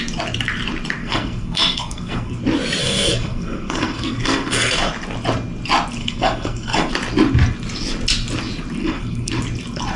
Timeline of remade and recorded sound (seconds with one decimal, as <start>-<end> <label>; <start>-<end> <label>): 0.0-1.0 recorded; 1.0-2.4 remade; 2.4-2.8 recorded; 2.8-4.9 remade; 4.9-6.0 recorded; 6.0-6.9 remade; 6.9-8.8 recorded; 8.8-9.3 remade; 9.3-10.0 recorded